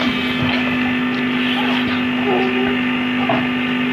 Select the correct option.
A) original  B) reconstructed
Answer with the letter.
A